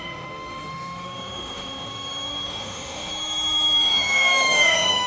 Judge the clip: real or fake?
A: fake